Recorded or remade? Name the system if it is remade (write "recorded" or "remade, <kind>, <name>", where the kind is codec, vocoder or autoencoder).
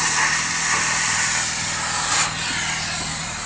recorded